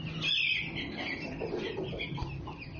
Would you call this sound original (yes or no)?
yes